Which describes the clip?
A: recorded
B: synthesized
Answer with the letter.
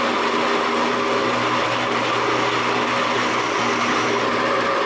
A